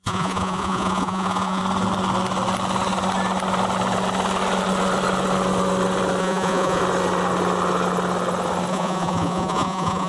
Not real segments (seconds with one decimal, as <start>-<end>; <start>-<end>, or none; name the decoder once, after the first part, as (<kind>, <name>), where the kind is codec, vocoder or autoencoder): 0.0-1.6 (vocoder, Vocos); 6.2-6.8; 8.7-10.1